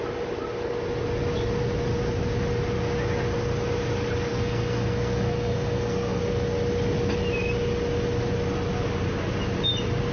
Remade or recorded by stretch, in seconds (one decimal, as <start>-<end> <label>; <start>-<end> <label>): 0.0-4.3 recorded; 4.3-6.2 remade; 6.2-10.1 recorded